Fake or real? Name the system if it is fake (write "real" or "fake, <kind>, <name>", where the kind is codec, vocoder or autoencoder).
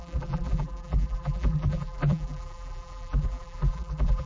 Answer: fake, vocoder, BigVGAN v2